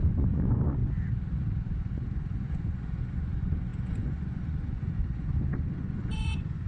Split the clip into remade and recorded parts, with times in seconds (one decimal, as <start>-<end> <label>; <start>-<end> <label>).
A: 0.0-0.8 remade; 0.8-1.9 recorded; 1.9-6.7 remade

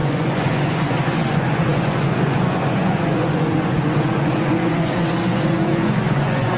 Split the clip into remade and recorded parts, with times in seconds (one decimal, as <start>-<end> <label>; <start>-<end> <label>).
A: 0.0-6.6 remade

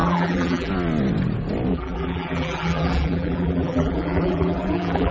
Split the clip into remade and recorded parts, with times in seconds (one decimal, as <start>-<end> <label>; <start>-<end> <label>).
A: 0.0-0.7 remade; 0.7-1.7 recorded; 1.7-5.1 remade